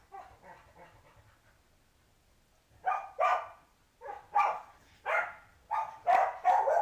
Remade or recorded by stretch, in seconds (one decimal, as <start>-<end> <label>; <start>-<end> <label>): 0.0-6.8 recorded

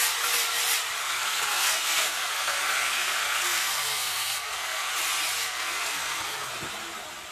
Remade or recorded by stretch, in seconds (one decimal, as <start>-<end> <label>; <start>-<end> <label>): 0.0-1.0 recorded; 1.0-4.9 remade; 4.9-5.4 recorded; 5.4-6.5 remade; 6.5-7.3 recorded

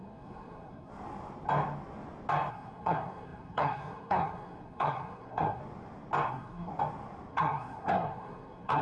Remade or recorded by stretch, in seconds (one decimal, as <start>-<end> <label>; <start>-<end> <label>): 0.0-0.9 remade; 0.9-2.5 recorded; 2.5-5.6 remade; 5.6-6.3 recorded; 6.3-6.7 remade; 6.7-7.3 recorded; 7.3-8.8 remade

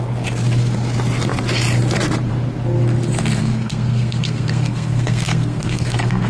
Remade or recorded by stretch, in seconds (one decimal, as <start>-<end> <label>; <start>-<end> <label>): 0.0-3.4 recorded; 3.4-6.3 remade

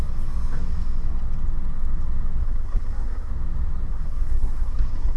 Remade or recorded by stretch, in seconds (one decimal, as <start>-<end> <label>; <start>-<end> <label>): 0.0-2.4 recorded; 2.4-3.3 remade; 3.3-3.9 recorded; 3.9-5.2 remade

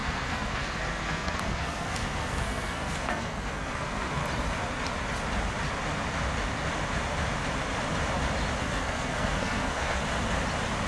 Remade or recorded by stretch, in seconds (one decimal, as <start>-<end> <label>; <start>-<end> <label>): 0.0-4.2 remade; 4.2-8.6 recorded; 8.6-10.0 remade; 10.0-10.9 recorded